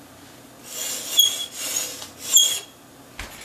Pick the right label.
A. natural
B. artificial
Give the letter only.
A